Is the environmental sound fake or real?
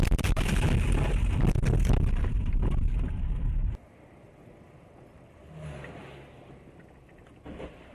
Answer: real